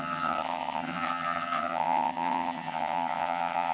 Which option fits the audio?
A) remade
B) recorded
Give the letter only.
A